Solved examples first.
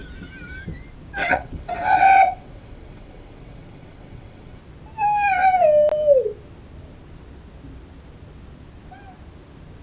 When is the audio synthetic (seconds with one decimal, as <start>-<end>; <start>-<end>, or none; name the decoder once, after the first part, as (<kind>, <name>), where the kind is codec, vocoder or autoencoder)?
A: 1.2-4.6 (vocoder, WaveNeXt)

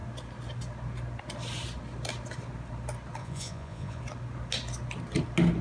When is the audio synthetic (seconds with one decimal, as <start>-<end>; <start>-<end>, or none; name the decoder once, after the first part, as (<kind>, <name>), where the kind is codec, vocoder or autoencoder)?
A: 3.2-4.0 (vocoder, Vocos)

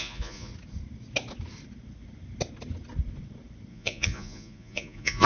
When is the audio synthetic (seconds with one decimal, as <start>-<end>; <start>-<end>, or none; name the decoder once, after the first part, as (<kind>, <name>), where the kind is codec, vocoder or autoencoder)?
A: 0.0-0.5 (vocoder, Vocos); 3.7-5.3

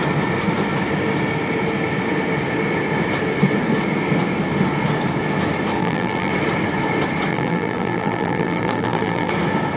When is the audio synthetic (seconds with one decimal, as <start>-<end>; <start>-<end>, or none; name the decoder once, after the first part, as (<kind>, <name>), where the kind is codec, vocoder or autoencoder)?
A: 5.8-6.3 (vocoder, BigVGAN v2); 7.3-9.3